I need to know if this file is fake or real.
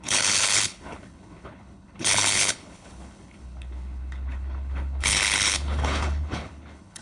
fake